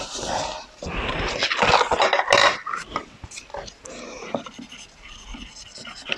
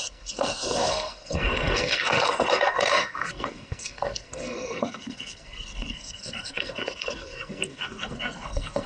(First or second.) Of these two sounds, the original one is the first